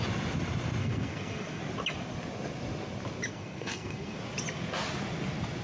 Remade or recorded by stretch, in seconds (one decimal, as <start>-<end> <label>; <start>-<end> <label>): 0.0-0.8 recorded; 0.8-1.6 remade; 1.6-3.3 recorded; 3.3-4.2 remade; 4.2-5.6 recorded